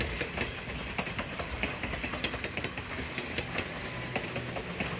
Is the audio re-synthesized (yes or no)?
no